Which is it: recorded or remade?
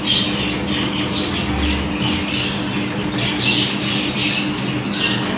recorded